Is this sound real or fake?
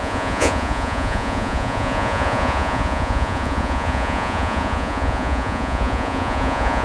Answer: fake